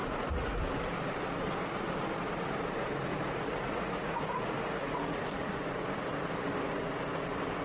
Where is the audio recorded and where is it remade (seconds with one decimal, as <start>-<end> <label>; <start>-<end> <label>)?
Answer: 0.0-0.6 remade; 0.6-3.1 recorded; 3.1-5.2 remade; 5.2-7.6 recorded